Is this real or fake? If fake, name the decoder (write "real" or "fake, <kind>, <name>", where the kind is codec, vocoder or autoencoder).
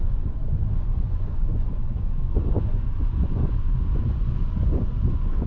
fake, vocoder, Vocos